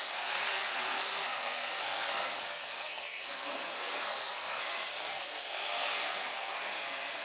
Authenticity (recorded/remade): remade